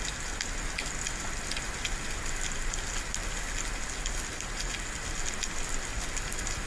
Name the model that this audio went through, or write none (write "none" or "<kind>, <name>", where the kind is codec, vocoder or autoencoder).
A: none